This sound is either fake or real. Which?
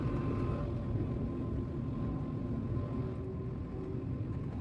real